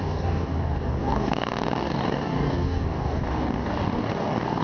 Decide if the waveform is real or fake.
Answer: fake